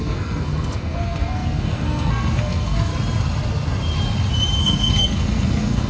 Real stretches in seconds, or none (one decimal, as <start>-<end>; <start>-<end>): 2.9-4.6

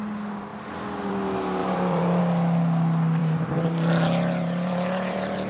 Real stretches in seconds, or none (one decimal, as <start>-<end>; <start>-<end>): 0.0-1.6; 2.2-3.2

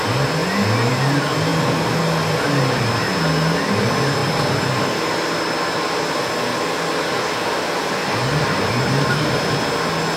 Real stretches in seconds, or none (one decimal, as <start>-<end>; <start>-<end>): 0.0-10.2